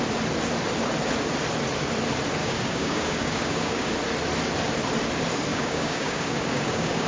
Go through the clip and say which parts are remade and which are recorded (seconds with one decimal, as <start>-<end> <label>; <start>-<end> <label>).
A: 0.0-2.4 recorded; 2.4-3.9 remade; 3.9-5.5 recorded; 5.5-7.1 remade